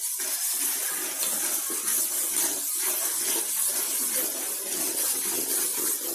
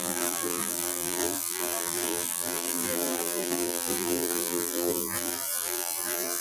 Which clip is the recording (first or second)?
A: first